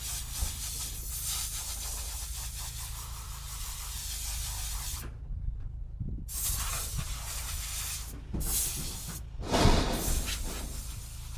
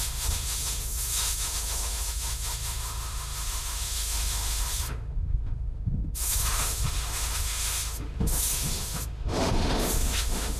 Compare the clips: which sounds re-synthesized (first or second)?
second